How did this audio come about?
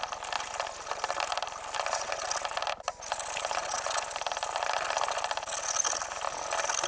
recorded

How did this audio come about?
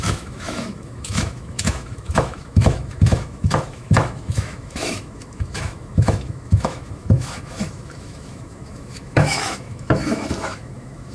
remade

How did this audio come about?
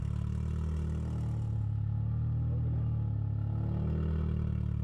recorded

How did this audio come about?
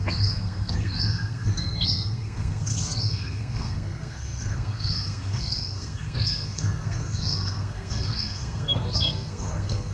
remade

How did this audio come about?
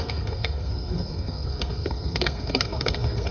remade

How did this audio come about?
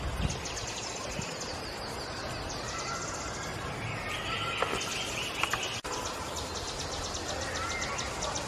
recorded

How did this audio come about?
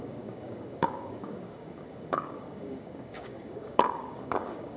remade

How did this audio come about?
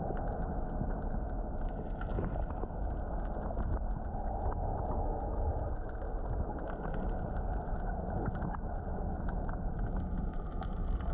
recorded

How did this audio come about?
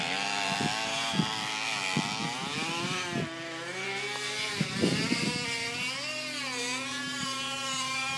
recorded